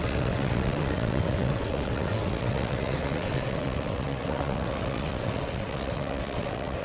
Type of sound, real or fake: fake